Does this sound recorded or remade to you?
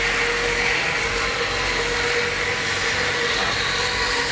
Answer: recorded